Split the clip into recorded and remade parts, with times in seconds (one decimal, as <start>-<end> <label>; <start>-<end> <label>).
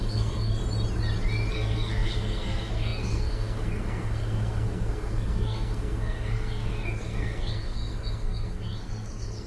0.0-0.6 remade; 0.6-1.5 recorded; 1.5-9.5 remade